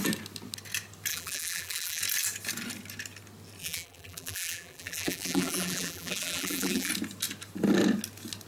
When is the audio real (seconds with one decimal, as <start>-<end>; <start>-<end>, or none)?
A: 0.0-1.1; 2.0-3.6; 6.9-8.5